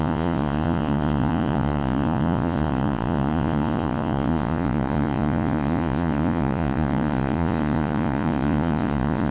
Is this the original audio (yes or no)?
no